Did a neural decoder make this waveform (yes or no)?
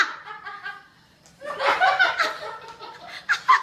no